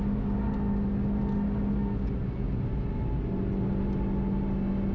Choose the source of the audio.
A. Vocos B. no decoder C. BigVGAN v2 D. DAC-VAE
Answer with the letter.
B